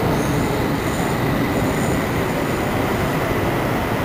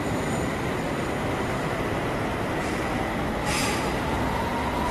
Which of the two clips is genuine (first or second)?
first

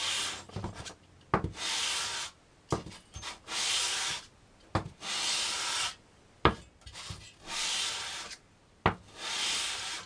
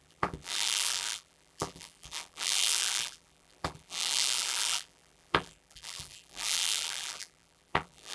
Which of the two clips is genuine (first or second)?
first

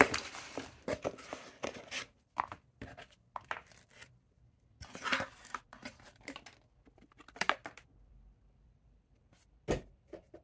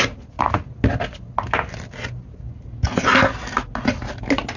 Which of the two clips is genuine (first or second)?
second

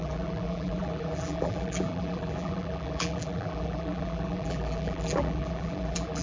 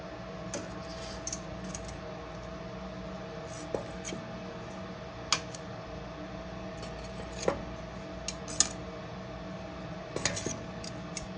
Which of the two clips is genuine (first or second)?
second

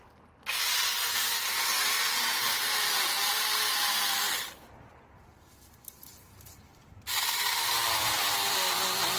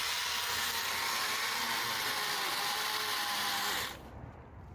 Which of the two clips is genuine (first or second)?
second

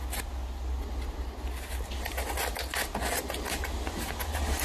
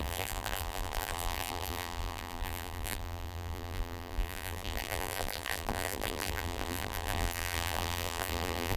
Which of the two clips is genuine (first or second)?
first